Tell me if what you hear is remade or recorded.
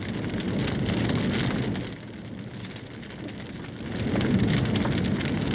recorded